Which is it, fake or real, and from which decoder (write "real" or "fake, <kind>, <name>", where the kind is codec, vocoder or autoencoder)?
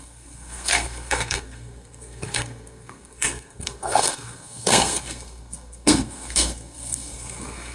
fake, codec, SNAC